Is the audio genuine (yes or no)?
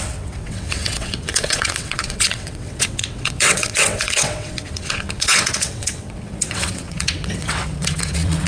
no